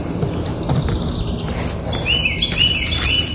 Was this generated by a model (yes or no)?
no